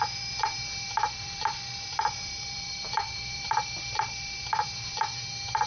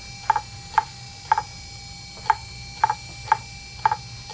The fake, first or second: first